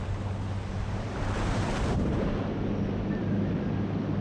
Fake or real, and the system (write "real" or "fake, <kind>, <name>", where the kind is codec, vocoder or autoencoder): real